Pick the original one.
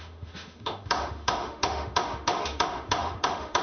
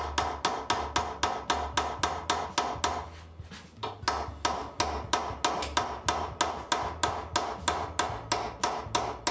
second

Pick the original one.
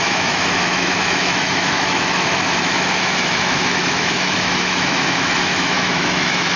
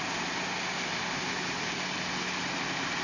second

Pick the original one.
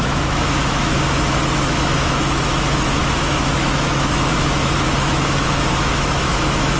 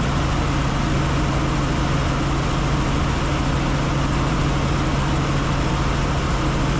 second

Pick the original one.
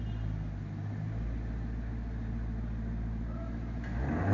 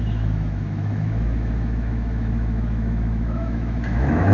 first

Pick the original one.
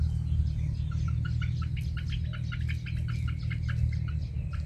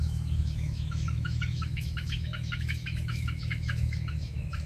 first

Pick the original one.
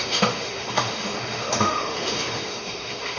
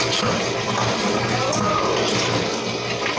second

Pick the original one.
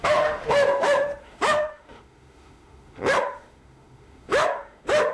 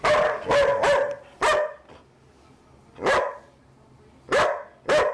second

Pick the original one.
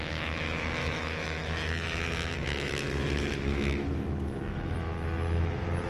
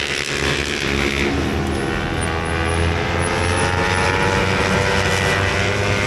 second